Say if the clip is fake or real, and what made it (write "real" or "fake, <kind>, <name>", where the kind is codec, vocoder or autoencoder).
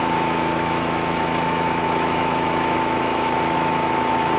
fake, autoencoder, DAC-VAE